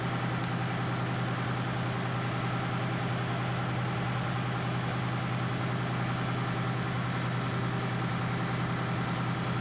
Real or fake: real